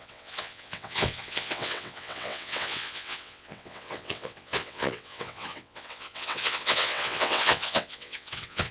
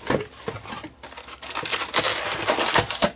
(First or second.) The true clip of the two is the second